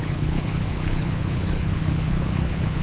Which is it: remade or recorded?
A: remade